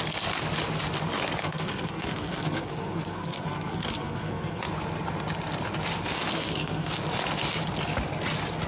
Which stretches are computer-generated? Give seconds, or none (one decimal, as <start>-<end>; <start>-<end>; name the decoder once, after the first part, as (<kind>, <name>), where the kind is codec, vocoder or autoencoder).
1.4-4.6 (codec, SNAC); 6.3-6.9